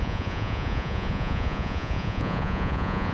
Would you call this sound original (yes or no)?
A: no